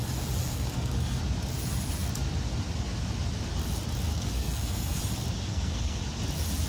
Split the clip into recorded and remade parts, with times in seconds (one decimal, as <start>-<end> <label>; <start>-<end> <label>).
0.0-0.5 recorded; 0.5-1.2 remade; 1.2-4.1 recorded; 4.1-5.0 remade; 5.0-5.5 recorded; 5.5-6.0 remade; 6.0-6.7 recorded